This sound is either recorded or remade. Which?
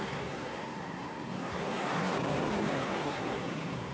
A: remade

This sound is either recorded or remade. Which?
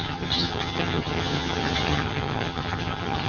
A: remade